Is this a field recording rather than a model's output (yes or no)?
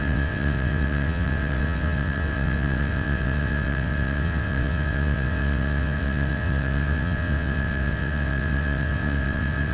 no